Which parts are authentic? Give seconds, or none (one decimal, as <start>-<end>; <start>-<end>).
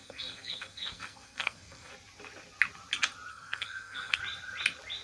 1.9-3.3; 4.2-5.0